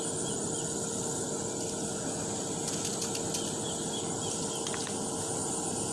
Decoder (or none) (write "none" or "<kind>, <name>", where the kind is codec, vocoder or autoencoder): none